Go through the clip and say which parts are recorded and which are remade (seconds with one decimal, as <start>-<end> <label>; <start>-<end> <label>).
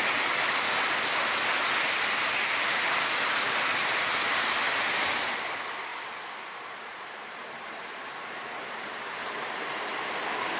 0.0-5.9 recorded; 5.9-9.4 remade; 9.4-10.6 recorded